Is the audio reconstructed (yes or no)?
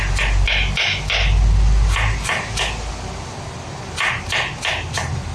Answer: no